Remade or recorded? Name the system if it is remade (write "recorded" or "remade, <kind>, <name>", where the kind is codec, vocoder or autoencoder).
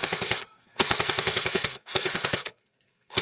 remade, codec, SNAC